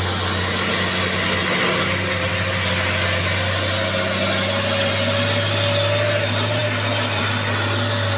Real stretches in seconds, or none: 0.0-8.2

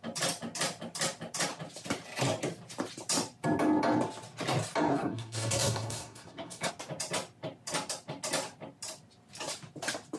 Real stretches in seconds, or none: 0.0-4.9; 6.7-10.2

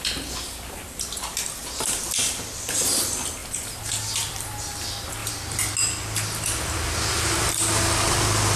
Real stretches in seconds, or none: 0.0-3.4; 4.5-5.2; 5.7-8.6